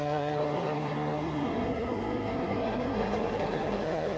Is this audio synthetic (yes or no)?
yes